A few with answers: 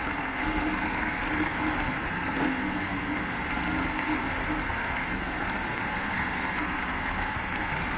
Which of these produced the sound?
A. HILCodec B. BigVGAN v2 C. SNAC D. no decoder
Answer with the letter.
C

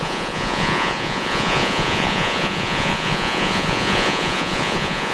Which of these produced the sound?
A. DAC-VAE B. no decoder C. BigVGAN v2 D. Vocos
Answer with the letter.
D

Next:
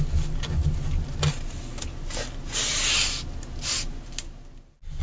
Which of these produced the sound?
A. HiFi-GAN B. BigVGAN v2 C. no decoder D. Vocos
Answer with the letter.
C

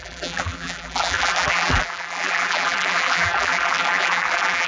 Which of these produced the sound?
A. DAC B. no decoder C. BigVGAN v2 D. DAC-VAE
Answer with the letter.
C